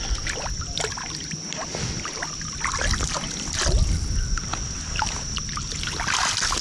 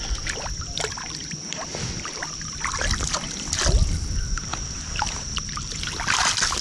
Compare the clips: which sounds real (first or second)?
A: first